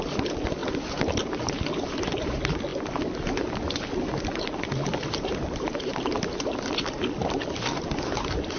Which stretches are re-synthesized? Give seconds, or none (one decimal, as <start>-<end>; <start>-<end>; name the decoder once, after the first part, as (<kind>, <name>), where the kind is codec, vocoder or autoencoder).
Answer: 0.6-1.4 (vocoder, BigVGAN v2); 2.7-6.3